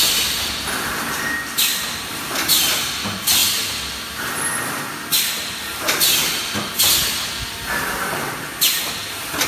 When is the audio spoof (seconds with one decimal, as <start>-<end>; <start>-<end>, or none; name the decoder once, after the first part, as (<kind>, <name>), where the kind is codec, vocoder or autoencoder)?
none